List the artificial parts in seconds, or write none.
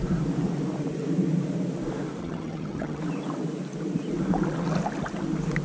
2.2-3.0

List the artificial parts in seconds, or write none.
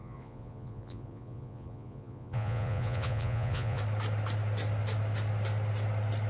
0.0-3.8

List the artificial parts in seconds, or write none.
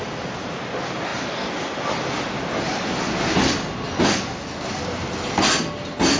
none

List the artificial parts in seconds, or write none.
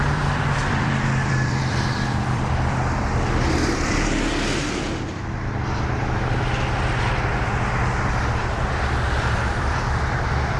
0.0-4.3; 8.4-10.6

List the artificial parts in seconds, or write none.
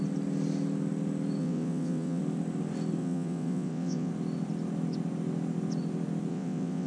1.4-2.2; 3.0-4.1; 6.3-6.9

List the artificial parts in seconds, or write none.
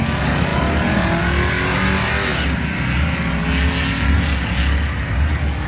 none